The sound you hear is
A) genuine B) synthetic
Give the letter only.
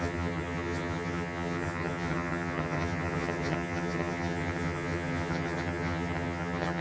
B